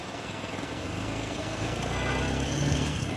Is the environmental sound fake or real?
fake